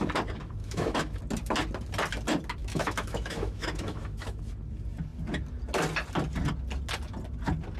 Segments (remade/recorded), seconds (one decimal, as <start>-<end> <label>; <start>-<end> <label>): 0.0-0.6 recorded; 0.6-1.2 remade; 1.2-2.6 recorded; 2.6-4.4 remade; 4.4-7.8 recorded